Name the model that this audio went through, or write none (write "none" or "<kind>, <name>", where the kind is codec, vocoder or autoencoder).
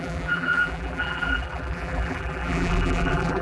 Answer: vocoder, BigVGAN v2